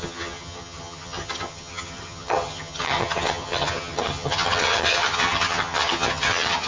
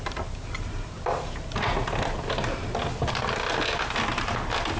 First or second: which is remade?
first